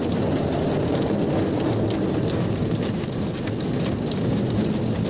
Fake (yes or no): no